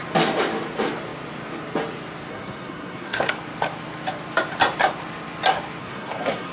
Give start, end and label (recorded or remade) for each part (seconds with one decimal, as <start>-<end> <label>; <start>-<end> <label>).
0.0-2.3 recorded; 2.3-3.3 remade; 3.3-5.8 recorded; 5.8-6.5 remade